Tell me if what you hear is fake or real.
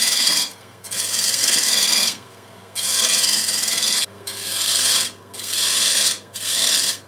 fake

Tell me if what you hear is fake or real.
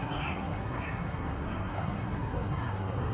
fake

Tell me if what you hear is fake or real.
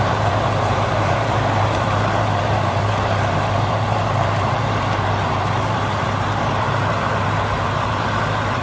fake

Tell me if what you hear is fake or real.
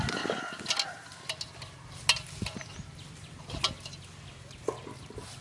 real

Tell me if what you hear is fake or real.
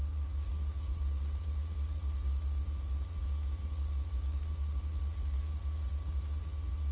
fake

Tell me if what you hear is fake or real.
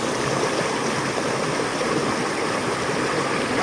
real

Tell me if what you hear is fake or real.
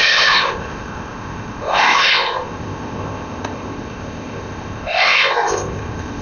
fake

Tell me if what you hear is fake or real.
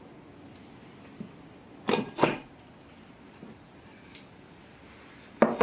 real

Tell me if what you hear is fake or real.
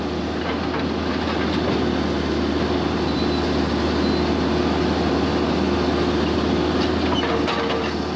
real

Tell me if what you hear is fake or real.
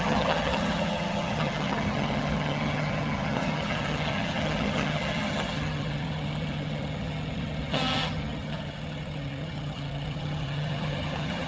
fake